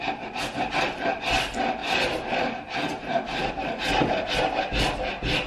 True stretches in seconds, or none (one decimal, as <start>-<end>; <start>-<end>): 0.0-1.8; 3.5-5.5